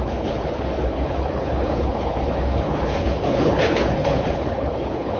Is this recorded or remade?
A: remade